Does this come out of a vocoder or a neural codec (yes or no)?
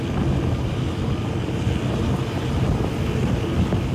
no